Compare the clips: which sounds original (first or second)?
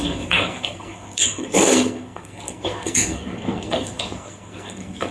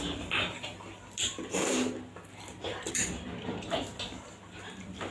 second